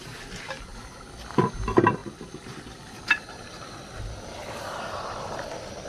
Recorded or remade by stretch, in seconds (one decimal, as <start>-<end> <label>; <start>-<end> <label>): 0.0-2.0 recorded; 2.0-5.5 remade; 5.5-5.9 recorded